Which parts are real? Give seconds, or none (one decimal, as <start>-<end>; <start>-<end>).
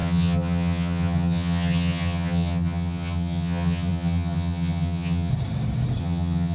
5.3-6.0